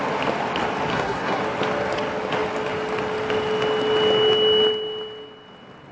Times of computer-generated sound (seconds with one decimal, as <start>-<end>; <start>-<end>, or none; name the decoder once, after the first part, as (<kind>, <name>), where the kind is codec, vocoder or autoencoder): 0.9-1.4 (codec, SNAC)